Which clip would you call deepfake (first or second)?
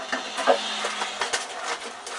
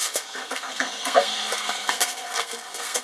second